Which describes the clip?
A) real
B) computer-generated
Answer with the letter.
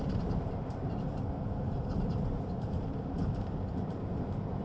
B